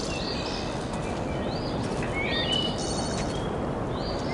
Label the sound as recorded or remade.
recorded